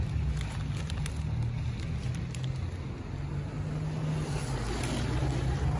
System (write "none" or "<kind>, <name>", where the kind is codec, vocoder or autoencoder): none